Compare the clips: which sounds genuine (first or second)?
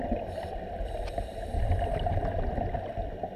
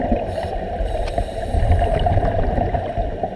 first